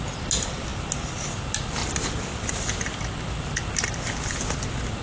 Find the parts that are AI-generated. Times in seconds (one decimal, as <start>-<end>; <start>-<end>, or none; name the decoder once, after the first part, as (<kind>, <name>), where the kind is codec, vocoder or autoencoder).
none